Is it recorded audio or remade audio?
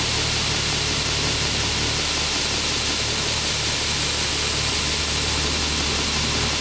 recorded